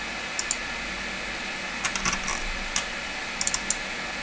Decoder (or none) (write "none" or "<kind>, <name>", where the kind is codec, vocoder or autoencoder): none